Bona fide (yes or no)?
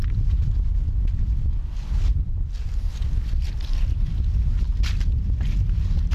yes